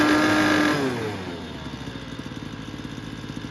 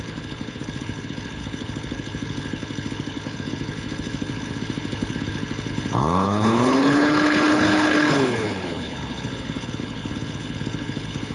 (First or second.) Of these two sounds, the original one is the first